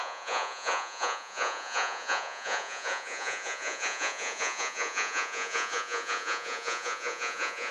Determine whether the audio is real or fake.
fake